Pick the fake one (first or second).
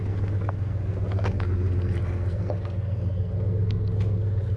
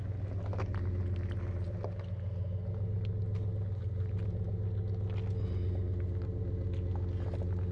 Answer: first